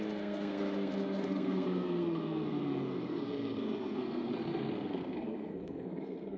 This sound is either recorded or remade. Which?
remade